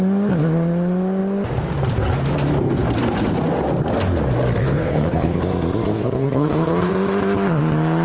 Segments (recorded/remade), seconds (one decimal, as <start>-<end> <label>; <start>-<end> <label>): 0.0-4.6 recorded; 4.6-5.4 remade; 5.4-5.9 recorded; 5.9-6.9 remade; 6.9-8.0 recorded